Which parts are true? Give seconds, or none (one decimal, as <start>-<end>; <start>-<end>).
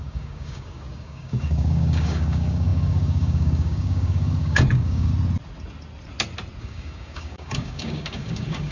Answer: 5.1-6.6